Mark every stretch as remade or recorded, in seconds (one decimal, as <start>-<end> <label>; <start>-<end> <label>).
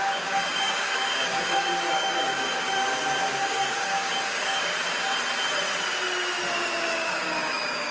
0.0-4.8 remade; 4.8-6.5 recorded; 6.5-7.9 remade